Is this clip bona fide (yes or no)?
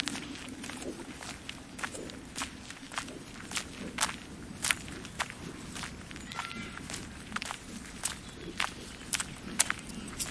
yes